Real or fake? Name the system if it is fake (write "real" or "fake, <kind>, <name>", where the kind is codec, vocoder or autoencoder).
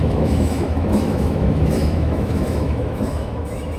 fake, autoencoder, DAC-VAE